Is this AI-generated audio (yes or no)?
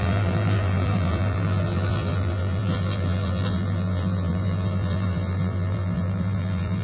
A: yes